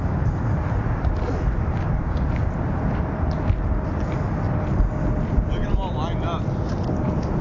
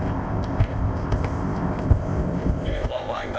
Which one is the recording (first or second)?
first